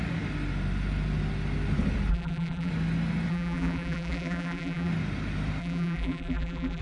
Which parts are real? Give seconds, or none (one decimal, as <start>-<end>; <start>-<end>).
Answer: 0.0-2.1; 2.7-3.3; 4.9-5.6